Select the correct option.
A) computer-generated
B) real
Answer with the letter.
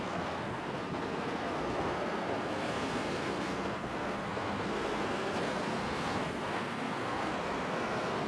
A